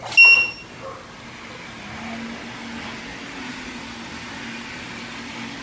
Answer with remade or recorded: recorded